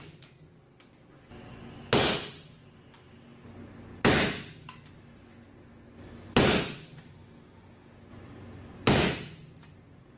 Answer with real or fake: real